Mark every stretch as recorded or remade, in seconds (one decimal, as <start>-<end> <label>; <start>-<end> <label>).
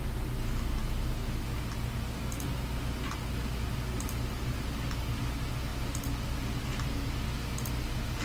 0.0-8.2 recorded